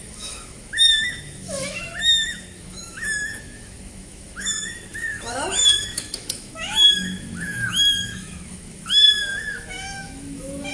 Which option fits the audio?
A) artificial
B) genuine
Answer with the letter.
A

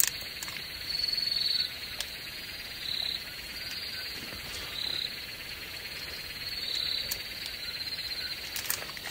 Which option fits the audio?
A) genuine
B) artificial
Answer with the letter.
A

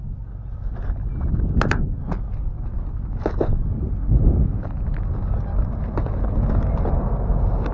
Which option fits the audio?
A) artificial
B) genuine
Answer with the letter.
B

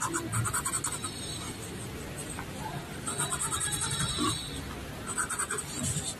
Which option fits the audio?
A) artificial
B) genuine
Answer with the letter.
B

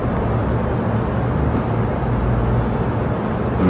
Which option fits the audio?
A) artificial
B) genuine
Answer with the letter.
B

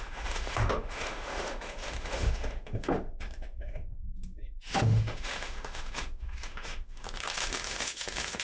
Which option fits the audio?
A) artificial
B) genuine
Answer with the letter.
A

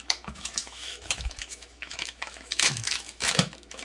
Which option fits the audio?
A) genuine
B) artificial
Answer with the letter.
B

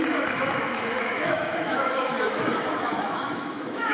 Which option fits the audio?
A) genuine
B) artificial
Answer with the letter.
B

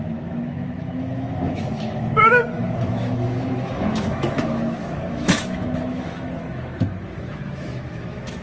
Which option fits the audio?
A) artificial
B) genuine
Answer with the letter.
A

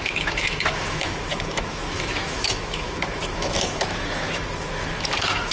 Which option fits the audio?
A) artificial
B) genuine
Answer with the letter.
A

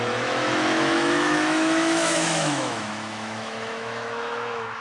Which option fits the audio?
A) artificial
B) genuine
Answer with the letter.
A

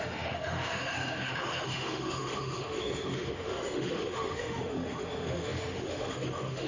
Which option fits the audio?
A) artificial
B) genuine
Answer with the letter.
A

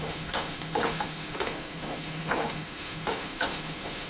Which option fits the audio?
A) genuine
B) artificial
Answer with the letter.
B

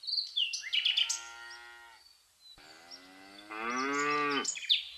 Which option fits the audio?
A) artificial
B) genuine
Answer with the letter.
B